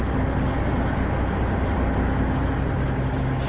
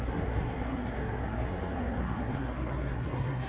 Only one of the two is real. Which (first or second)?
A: first